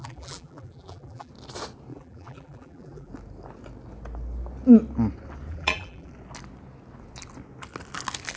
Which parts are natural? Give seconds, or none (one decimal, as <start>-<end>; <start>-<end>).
1.3-1.9; 3.1-5.5; 6.1-8.4